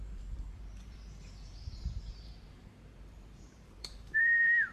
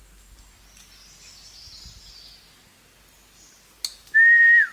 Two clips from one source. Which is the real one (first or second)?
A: second